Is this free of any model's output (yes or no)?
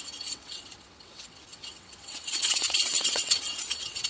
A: no